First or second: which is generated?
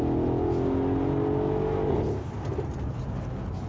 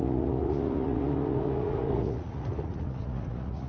second